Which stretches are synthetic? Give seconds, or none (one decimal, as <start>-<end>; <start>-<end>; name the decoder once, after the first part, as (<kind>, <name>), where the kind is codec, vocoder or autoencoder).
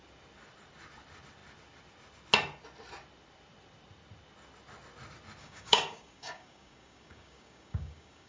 5.4-8.3 (codec, DAC)